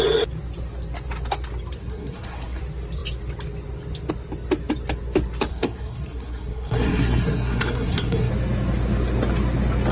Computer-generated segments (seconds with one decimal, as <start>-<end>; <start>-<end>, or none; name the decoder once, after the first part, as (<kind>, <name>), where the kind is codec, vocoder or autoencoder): 1.8-2.6 (codec, SNAC); 5.5-8.3